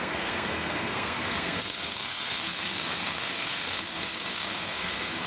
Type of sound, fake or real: fake